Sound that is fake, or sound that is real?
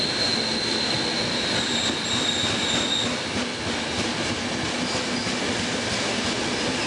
real